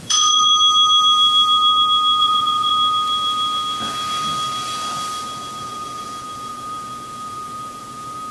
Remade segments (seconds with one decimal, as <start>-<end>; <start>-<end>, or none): 0.0-0.5; 2.2-2.7; 5.6-8.3